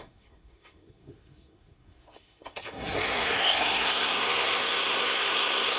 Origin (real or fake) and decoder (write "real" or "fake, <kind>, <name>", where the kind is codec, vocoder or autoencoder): fake, codec, SNAC